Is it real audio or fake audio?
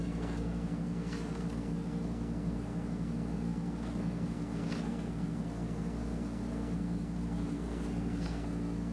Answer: fake